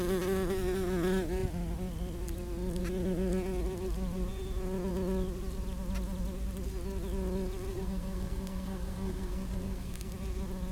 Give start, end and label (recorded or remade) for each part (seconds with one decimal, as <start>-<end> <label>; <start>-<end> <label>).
0.0-7.7 recorded; 7.7-10.1 remade; 10.1-10.7 recorded